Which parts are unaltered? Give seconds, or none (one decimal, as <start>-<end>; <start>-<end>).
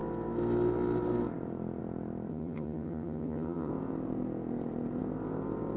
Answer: 0.0-2.3; 3.7-5.8